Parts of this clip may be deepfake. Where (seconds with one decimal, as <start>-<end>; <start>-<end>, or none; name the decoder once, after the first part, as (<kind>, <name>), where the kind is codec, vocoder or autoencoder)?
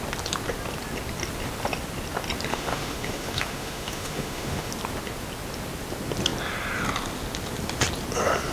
2.5-4.7 (autoencoder, DAC-VAE)